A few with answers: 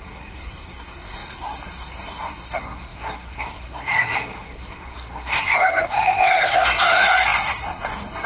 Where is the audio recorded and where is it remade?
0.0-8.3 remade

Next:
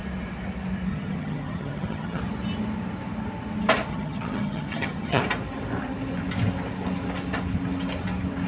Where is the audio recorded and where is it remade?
0.0-0.9 recorded; 0.9-2.2 remade; 2.2-3.9 recorded; 3.9-5.2 remade; 5.2-8.5 recorded

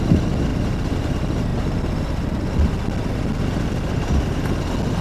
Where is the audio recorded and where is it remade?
0.0-5.0 recorded

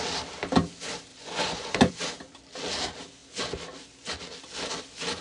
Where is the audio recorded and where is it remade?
0.0-1.1 recorded; 1.1-1.9 remade; 1.9-5.2 recorded

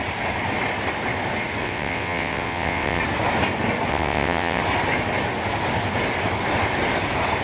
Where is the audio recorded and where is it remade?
0.0-1.6 recorded; 1.6-3.0 remade; 3.0-3.9 recorded; 3.9-4.6 remade; 4.6-7.4 recorded

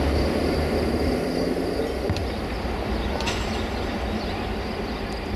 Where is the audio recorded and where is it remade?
0.0-5.4 recorded